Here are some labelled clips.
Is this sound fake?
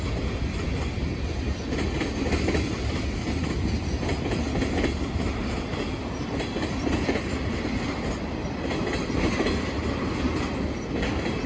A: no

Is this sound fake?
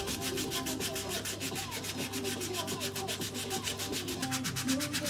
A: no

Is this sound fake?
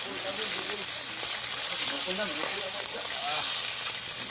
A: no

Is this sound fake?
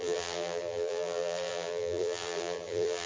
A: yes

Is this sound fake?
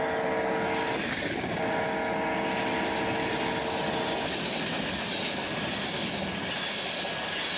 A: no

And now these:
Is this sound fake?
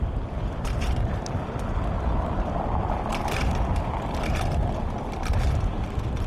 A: no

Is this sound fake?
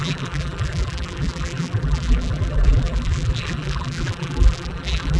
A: yes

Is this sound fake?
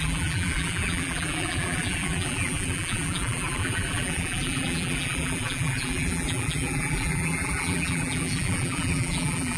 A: yes